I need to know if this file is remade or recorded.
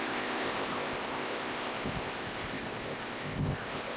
remade